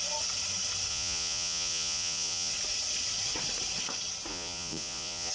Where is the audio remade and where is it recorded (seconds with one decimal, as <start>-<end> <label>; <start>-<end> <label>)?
0.0-0.9 recorded; 0.9-2.5 remade; 2.5-4.3 recorded; 4.3-5.3 remade